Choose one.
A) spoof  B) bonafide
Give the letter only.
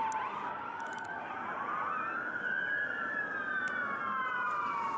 B